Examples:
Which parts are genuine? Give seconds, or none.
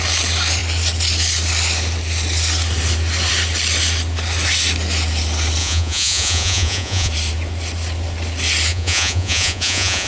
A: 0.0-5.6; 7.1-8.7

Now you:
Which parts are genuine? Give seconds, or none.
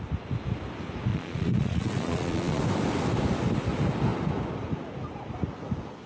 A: 0.0-1.1; 2.6-6.1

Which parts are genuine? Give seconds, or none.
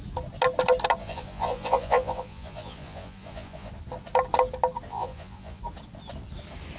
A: 0.0-1.0; 3.7-4.9; 5.6-6.8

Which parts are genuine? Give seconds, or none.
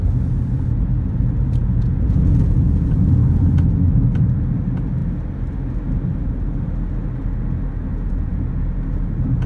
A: 0.0-1.6; 3.5-7.9; 8.6-9.5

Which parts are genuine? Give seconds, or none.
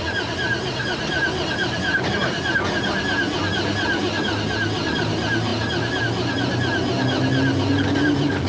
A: 0.0-8.5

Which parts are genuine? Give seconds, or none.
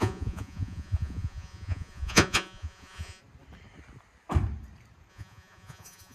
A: 3.2-5.1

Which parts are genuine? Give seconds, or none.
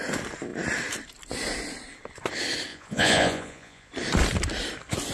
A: 0.0-2.7; 3.9-5.1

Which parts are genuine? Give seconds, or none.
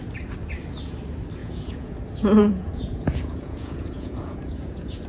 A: 0.0-1.4; 2.0-2.4